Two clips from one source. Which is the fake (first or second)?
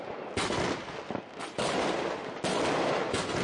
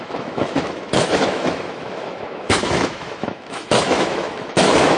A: second